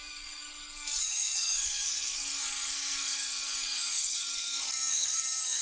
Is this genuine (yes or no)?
no